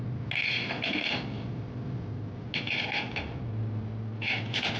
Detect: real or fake real